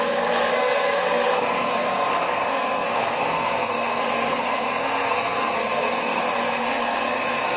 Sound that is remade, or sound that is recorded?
remade